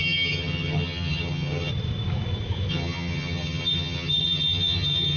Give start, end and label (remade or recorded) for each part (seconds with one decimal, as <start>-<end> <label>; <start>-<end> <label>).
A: 0.0-1.7 remade; 1.7-2.7 recorded; 2.7-5.2 remade